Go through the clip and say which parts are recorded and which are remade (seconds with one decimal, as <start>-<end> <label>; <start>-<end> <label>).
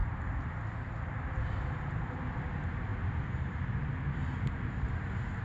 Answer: 0.0-5.4 recorded